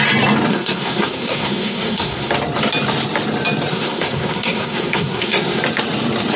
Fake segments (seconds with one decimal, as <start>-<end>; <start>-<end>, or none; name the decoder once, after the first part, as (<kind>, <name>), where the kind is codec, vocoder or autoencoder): 0.5-2.3 (codec, SNAC); 3.7-5.6